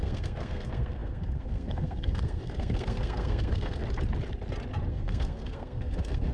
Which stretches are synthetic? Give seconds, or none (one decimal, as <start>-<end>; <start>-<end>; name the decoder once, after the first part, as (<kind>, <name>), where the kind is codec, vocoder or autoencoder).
0.0-3.8 (codec, SNAC); 4.9-6.3